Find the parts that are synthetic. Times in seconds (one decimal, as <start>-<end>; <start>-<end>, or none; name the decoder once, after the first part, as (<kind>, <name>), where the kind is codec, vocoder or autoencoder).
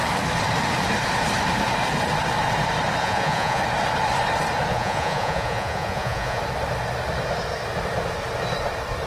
3.0-3.6 (vocoder, Vocos); 4.7-6.4